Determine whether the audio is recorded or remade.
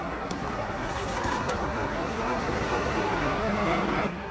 remade